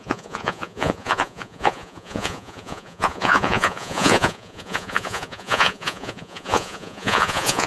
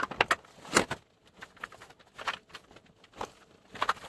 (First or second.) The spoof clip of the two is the first